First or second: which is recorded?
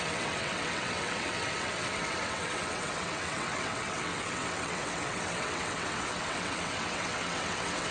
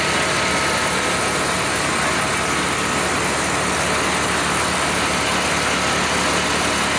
second